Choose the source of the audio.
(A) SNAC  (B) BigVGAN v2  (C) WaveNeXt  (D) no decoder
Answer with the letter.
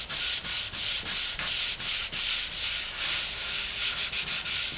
D